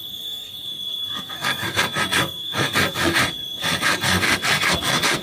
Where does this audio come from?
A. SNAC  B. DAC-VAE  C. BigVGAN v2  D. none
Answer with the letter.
A